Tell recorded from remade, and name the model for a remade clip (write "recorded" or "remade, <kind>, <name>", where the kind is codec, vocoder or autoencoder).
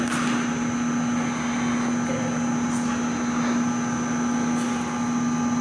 recorded